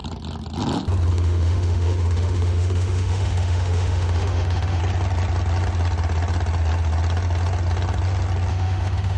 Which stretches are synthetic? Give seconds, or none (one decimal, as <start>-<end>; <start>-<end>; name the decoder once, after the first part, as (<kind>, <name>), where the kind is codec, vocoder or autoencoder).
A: 1.1-4.8 (autoencoder, DAC-VAE); 8.5-9.2